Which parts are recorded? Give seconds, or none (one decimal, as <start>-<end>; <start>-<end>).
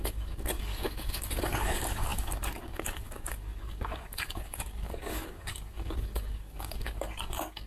none